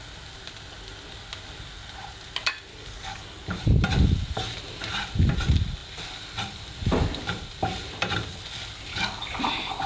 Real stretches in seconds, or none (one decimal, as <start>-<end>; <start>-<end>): 0.0-2.7; 3.6-8.9; 9.4-9.9